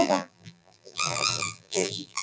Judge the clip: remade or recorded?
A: remade